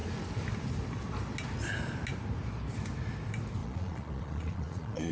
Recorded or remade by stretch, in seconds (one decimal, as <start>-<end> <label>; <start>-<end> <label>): 0.0-3.6 recorded; 3.6-5.1 remade